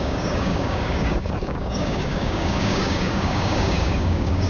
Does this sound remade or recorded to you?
remade